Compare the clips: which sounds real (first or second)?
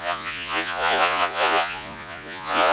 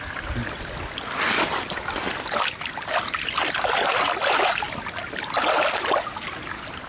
second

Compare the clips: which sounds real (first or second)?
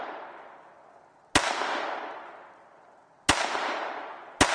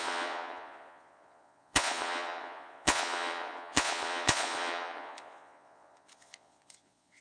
first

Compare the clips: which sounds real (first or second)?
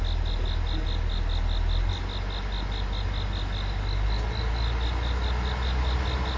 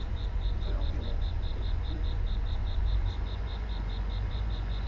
first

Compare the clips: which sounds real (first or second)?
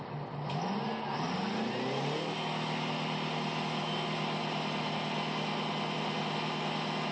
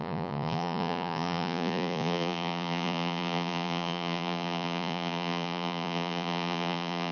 first